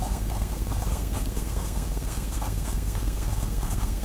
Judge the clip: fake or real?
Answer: fake